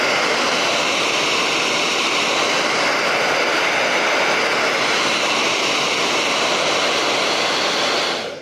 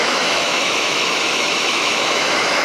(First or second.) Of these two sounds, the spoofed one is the second